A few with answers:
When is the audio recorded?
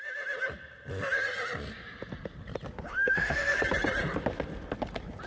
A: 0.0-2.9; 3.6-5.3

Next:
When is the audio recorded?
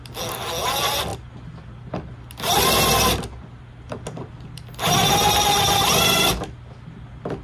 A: 0.0-7.4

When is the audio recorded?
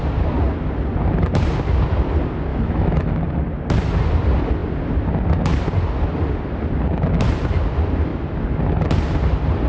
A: 0.0-2.5; 3.1-9.7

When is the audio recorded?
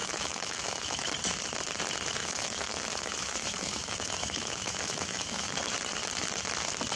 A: 1.1-2.2; 5.5-7.0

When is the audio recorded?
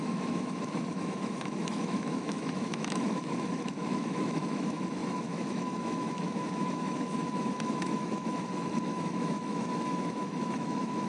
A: none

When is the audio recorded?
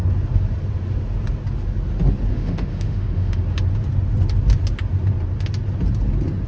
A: 0.0-2.3; 3.4-6.5